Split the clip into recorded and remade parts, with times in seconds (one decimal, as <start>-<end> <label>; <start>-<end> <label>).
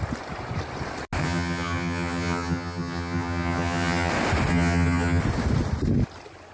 0.0-1.2 recorded; 1.2-4.1 remade; 4.1-4.5 recorded; 4.5-5.2 remade; 5.2-6.5 recorded